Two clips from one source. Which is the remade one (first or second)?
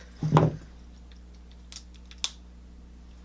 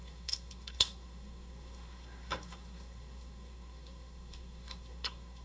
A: second